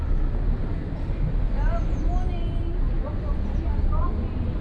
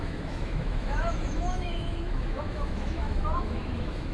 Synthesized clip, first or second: second